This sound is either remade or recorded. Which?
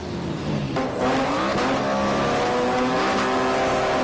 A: recorded